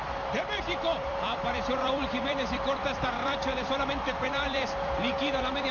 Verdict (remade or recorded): remade